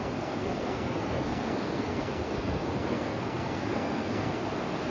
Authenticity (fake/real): fake